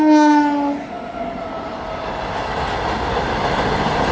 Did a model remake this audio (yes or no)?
no